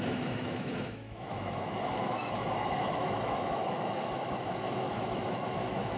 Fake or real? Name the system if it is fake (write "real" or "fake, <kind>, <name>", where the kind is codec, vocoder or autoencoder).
fake, autoencoder, DAC-VAE